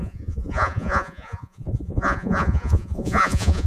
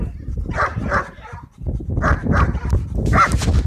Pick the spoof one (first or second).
first